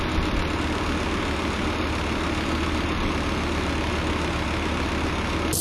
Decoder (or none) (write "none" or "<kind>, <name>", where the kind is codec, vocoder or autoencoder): none